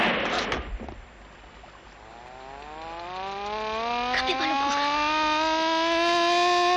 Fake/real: real